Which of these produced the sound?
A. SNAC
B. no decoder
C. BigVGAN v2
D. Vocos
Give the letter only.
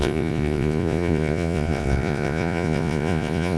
D